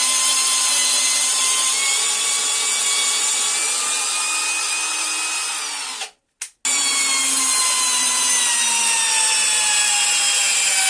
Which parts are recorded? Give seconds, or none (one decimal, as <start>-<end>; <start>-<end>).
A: 0.0-10.9